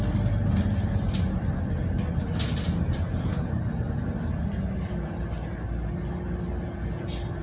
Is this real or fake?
real